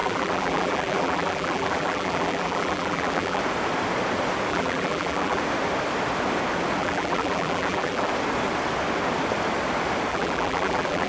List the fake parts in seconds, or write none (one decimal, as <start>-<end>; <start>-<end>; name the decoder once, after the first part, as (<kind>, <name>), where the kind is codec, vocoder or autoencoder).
0.0-3.4 (vocoder, BigVGAN v2); 4.5-5.4; 6.8-8.1; 10.1-11.1